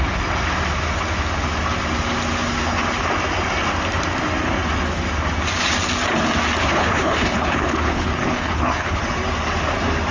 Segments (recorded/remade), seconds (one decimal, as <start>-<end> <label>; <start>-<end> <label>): 0.0-6.6 recorded; 6.6-9.0 remade; 9.0-10.1 recorded